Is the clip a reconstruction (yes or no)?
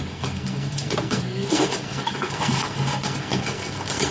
yes